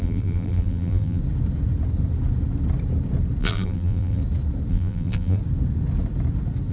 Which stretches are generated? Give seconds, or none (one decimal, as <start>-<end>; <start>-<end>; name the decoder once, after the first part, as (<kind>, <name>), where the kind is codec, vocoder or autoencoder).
0.0-1.2 (vocoder, BigVGAN v2); 3.4-4.2; 4.7-5.4